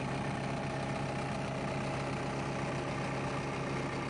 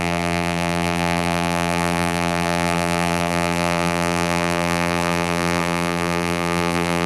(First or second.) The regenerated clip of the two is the second